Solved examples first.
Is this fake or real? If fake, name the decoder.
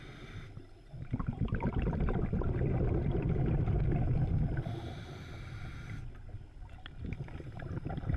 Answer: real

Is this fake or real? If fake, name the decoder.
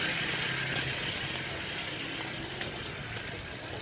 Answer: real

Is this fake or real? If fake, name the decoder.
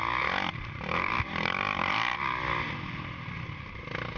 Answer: real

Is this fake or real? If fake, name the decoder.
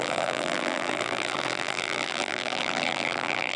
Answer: fake, vocoder, BigVGAN v2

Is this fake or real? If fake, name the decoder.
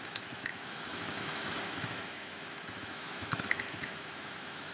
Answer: fake, autoencoder, DAC-VAE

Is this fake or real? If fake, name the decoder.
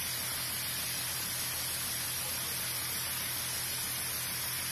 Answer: real